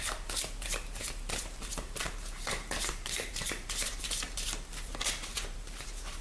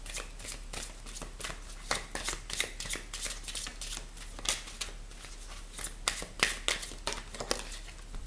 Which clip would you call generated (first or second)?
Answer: first